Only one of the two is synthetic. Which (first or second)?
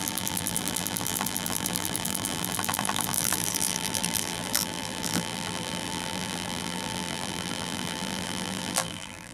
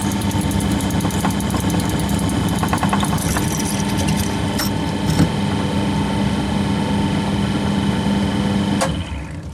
first